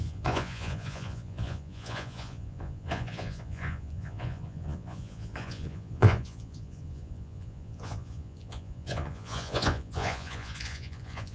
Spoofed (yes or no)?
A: yes